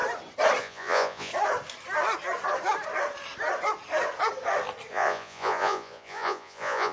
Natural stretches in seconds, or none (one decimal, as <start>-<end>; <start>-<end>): 0.0-0.6; 1.3-4.9